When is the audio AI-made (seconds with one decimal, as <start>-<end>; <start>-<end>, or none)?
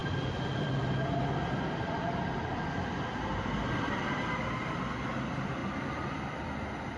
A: 0.0-4.2; 5.6-7.0